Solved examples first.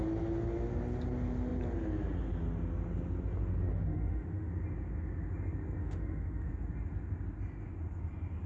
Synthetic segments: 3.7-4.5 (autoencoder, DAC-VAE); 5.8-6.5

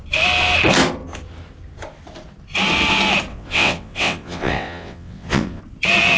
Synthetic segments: 3.3-5.6 (vocoder, WaveNeXt)

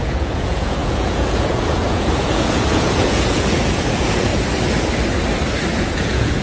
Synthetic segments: 0.0-4.3 (vocoder, Vocos); 5.8-6.4